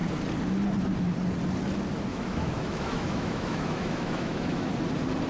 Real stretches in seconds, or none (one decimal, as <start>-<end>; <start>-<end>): 0.0-2.1; 4.7-5.3